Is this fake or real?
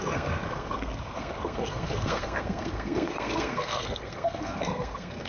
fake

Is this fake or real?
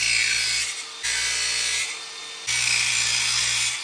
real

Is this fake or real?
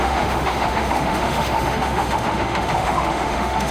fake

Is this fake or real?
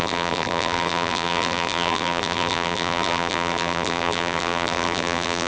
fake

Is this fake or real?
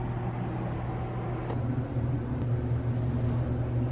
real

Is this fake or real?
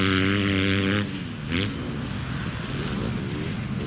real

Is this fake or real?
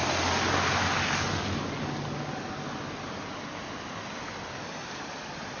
real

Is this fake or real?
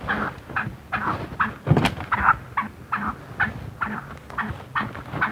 real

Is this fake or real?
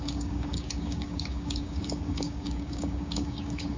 fake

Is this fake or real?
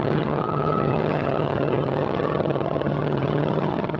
fake